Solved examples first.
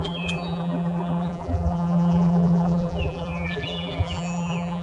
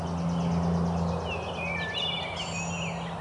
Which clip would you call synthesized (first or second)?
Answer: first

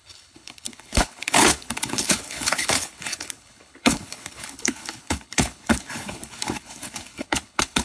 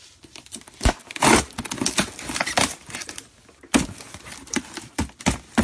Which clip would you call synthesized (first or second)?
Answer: first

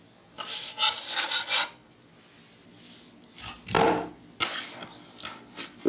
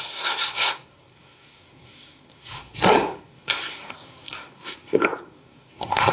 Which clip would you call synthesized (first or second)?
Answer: second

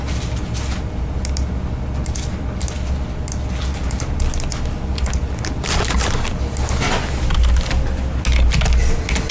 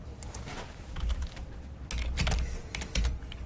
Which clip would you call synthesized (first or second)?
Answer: second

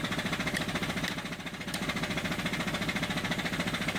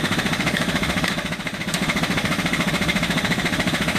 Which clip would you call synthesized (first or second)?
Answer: second